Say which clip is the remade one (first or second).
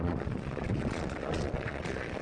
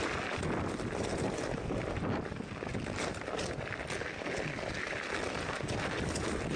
first